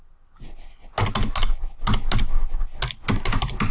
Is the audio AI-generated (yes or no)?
no